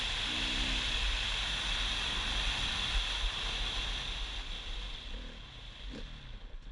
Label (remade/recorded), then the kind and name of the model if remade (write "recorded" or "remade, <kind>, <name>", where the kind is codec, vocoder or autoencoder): recorded